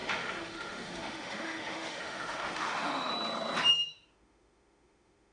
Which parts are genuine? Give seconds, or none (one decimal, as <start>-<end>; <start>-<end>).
3.1-3.7